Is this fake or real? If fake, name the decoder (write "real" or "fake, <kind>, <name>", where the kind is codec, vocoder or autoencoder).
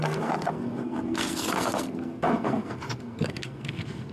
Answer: fake, codec, SNAC